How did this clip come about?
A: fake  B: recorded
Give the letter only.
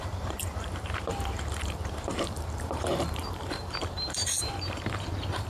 A